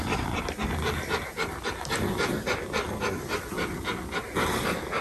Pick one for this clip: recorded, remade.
recorded